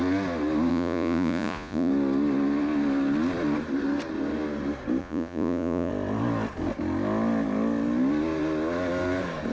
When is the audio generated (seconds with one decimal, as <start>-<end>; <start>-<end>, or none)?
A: 0.7-1.9; 5.0-5.9

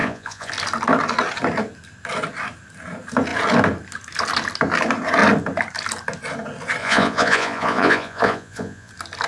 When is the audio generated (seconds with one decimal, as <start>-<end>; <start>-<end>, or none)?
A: 0.0-0.5; 6.8-8.9

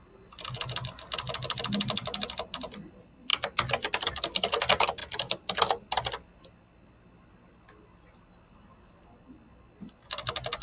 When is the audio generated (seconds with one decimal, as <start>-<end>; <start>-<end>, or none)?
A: none

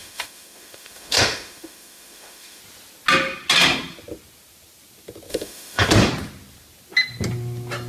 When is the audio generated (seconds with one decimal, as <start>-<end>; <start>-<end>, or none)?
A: 0.0-2.6; 5.3-5.9

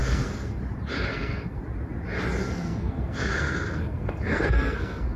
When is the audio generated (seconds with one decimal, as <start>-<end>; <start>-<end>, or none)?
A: 0.0-0.6; 1.1-1.6; 2.4-5.2